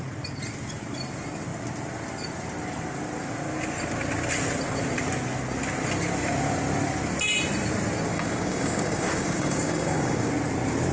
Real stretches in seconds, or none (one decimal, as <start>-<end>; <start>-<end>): 0.0-8.1; 10.3-10.9